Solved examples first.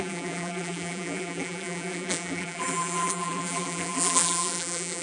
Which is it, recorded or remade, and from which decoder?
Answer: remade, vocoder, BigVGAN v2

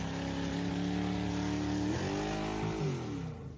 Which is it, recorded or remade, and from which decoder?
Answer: recorded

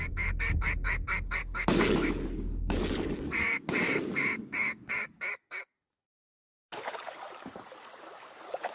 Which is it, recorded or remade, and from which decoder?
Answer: remade, codec, DAC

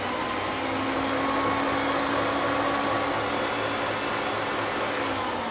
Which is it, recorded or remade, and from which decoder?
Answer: recorded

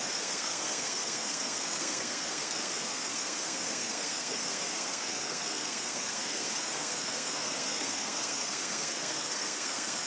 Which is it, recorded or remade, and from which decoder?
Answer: remade, codec, SNAC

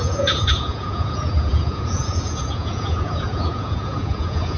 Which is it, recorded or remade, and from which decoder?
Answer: remade, vocoder, Vocos